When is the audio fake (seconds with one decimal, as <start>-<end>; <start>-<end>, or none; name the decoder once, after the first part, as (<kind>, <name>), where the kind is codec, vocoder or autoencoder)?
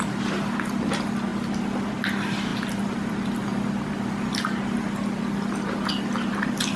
none